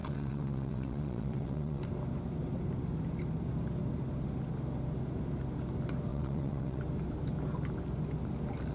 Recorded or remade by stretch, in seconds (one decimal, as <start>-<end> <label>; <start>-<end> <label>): 0.0-1.8 remade; 1.8-6.1 recorded; 6.1-6.8 remade; 6.8-8.7 recorded